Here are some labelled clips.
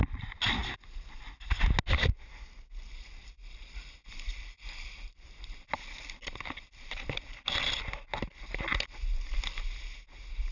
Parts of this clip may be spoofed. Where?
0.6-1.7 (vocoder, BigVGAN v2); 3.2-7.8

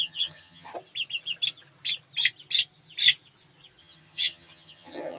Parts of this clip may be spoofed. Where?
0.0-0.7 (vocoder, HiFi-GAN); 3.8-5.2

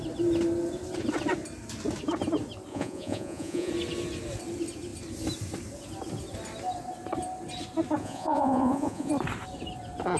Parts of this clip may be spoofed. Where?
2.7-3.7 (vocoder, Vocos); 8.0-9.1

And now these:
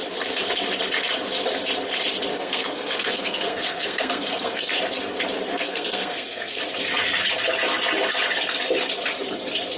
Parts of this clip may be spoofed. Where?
2.3-4.8 (codec, SNAC); 5.5-6.6